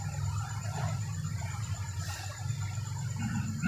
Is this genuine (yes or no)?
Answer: yes